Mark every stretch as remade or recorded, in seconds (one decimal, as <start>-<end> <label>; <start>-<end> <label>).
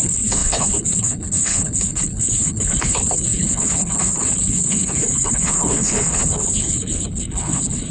0.0-7.9 remade